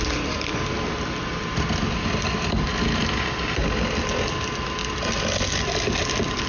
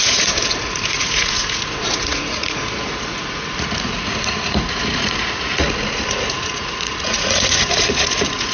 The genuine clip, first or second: first